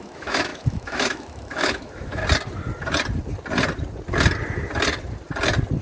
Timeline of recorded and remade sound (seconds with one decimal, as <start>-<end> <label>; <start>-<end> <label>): 0.0-2.2 remade; 2.2-5.8 recorded